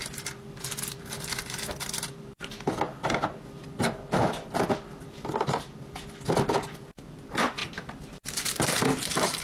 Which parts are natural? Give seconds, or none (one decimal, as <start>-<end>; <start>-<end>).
0.0-7.6